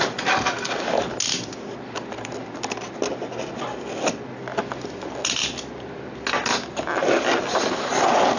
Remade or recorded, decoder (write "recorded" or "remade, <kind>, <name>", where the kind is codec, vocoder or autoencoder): recorded